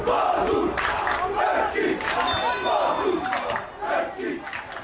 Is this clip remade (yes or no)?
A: no